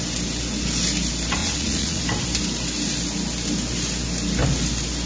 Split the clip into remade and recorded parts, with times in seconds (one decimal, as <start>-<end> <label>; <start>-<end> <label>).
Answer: 0.0-1.4 recorded; 1.4-2.0 remade; 2.0-5.1 recorded